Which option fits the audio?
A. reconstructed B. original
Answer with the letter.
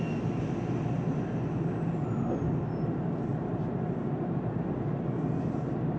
B